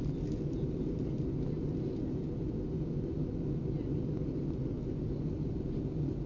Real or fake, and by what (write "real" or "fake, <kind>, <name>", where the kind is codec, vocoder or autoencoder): real